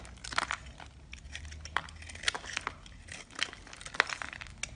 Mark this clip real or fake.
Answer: real